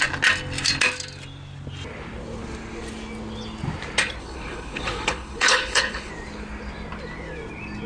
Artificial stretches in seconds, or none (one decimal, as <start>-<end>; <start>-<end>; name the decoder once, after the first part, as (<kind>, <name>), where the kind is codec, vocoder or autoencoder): 4.2-6.1 (codec, HILCodec)